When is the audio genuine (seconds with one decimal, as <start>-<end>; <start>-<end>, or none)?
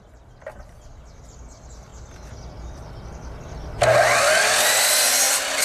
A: 0.0-5.6